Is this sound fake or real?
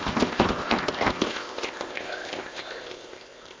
fake